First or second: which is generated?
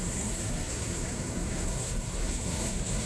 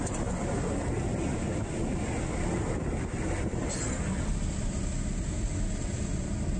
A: first